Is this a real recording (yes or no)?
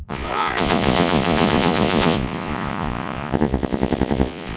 no